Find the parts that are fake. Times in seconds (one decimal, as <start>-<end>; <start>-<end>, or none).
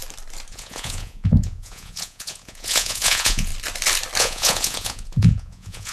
0.5-3.5; 4.2-5.9